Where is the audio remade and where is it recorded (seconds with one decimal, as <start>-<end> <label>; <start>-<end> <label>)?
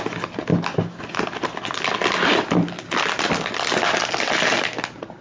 0.0-5.2 recorded